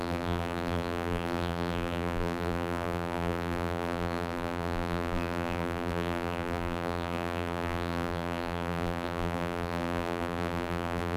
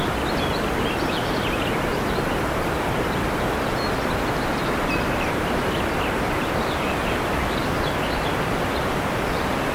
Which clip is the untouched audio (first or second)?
second